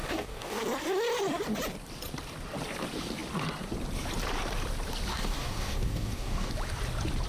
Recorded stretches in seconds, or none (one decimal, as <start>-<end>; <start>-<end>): 0.6-5.1; 6.5-7.3